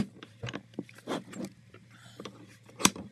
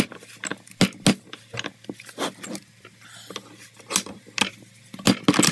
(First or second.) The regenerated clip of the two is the first